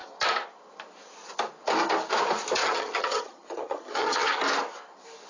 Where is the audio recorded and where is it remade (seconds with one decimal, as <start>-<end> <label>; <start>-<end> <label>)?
0.0-2.6 recorded; 2.6-4.4 remade; 4.4-5.3 recorded